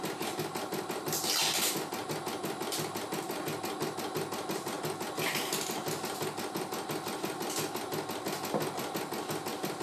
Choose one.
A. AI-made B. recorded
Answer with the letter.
B